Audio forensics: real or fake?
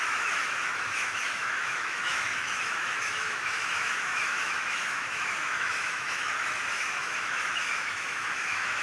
fake